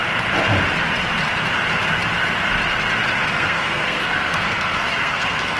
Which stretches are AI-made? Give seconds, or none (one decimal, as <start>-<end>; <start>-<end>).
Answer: 3.4-5.6